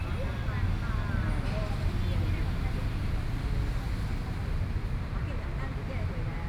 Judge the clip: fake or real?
real